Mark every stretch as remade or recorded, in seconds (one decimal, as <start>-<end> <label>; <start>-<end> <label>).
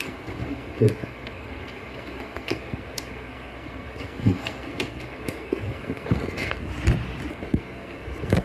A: 0.0-6.7 remade; 6.7-7.3 recorded; 7.3-8.4 remade